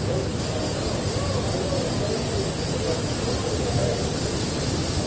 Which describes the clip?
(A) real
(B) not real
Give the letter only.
A